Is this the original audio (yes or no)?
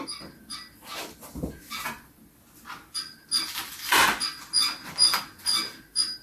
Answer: yes